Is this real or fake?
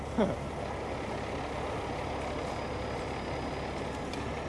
real